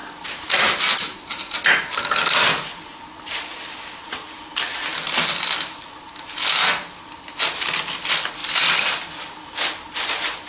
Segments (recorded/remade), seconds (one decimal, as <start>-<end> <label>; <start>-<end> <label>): 0.0-10.5 recorded